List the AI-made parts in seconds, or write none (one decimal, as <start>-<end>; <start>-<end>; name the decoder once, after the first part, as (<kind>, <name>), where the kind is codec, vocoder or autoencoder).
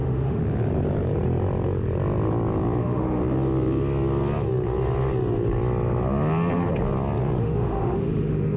0.0-0.4 (autoencoder, DAC-VAE); 2.8-3.2; 7.4-8.6